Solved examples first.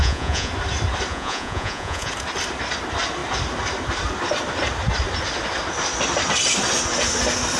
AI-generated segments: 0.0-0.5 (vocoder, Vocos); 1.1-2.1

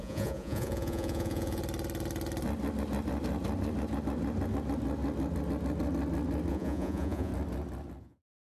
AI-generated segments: 0.0-1.6 (vocoder, Vocos); 6.5-7.3; 8.0-8.5

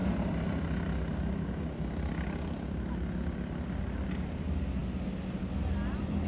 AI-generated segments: none

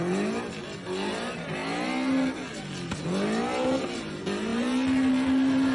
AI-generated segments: none

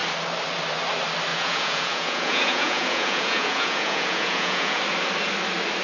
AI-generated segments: 1.3-4.8 (vocoder, Vocos)

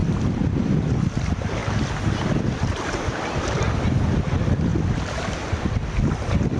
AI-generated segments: none

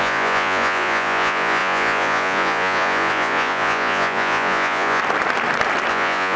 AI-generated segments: 0.0-5.0 (vocoder, Vocos); 5.9-6.4